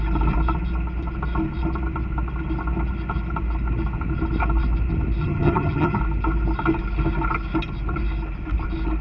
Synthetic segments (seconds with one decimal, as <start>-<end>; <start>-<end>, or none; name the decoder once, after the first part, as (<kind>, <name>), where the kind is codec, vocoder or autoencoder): 5.2-6.0 (vocoder, HiFi-GAN)